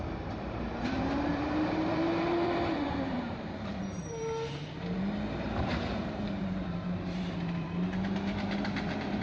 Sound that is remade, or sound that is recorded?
remade